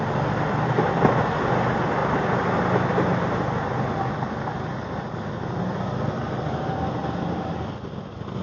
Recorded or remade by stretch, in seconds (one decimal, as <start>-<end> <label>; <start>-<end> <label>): 0.0-8.4 recorded